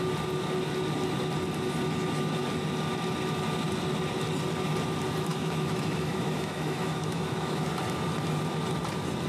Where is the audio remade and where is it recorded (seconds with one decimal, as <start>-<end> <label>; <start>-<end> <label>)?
0.0-5.3 recorded; 5.3-7.6 remade; 7.6-9.3 recorded